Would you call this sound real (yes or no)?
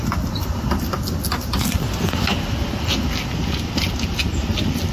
yes